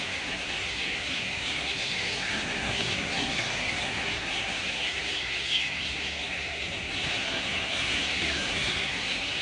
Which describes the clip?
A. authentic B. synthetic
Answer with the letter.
B